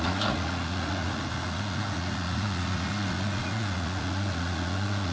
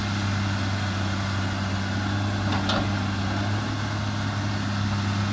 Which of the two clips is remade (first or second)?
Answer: first